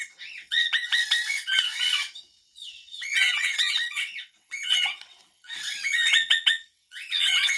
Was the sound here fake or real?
fake